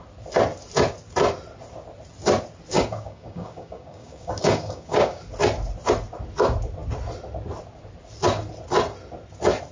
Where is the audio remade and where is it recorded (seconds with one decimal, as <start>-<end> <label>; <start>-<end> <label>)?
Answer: 0.0-2.7 recorded; 2.7-5.2 remade; 5.2-9.7 recorded